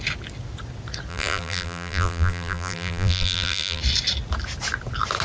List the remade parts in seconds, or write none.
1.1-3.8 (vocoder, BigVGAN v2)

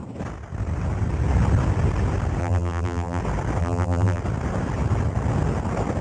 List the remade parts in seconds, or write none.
2.4-3.2 (vocoder, BigVGAN v2); 3.6-4.2

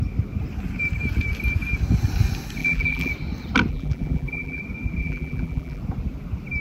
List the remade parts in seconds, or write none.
2.6-3.1 (vocoder, BigVGAN v2); 3.7-4.6; 5.0-5.8

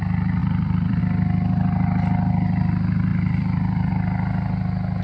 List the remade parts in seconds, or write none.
0.4-1.0 (vocoder, BigVGAN v2); 3.1-3.9

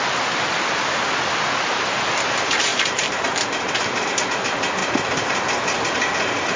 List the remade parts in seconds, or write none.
2.7-3.7 (vocoder, BigVGAN v2)